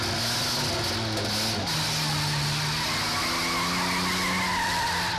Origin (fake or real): real